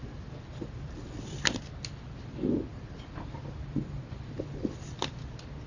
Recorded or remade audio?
recorded